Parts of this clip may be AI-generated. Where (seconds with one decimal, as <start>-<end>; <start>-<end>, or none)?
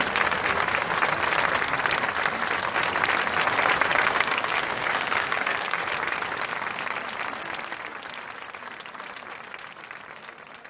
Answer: 3.9-5.8